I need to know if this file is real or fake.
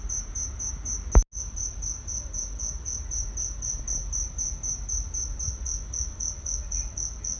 real